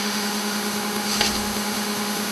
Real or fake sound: fake